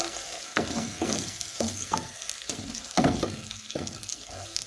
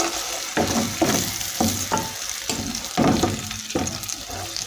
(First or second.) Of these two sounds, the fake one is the first